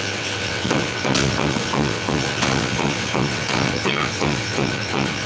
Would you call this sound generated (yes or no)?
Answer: yes